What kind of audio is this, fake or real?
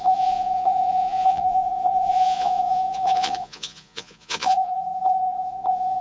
fake